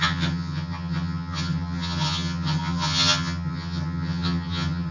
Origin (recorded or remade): remade